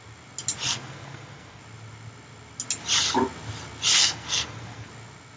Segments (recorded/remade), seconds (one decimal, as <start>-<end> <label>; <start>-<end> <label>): 0.0-0.7 recorded; 0.7-1.6 remade; 1.6-4.0 recorded; 4.0-4.9 remade; 4.9-5.4 recorded

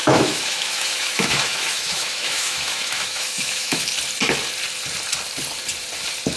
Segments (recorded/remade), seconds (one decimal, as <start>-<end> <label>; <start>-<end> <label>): 0.0-3.8 remade; 3.8-6.4 recorded

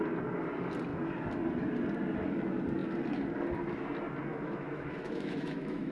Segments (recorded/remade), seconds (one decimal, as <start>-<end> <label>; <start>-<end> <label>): 0.0-4.3 recorded; 4.3-5.9 remade

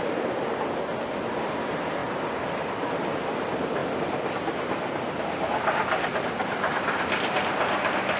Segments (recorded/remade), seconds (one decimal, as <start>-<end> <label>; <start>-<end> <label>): 0.0-2.0 recorded; 2.0-2.9 remade; 2.9-3.8 recorded; 3.8-4.3 remade; 4.3-8.2 recorded

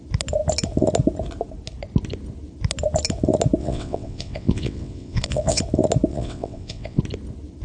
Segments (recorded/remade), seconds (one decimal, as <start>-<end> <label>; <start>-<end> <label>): 0.0-3.6 recorded; 3.6-5.6 remade; 5.6-6.1 recorded; 6.1-7.0 remade; 7.0-7.6 recorded

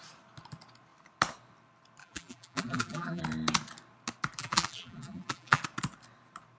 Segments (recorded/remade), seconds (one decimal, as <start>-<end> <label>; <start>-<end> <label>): 0.0-2.0 recorded; 2.0-3.2 remade; 3.2-4.4 recorded; 4.4-5.6 remade; 5.6-6.6 recorded

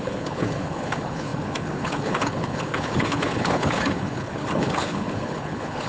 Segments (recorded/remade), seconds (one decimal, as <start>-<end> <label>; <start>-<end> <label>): 0.0-5.9 remade

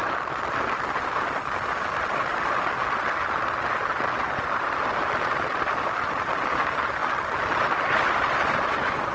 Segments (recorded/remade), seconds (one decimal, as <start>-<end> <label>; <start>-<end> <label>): 0.0-9.1 recorded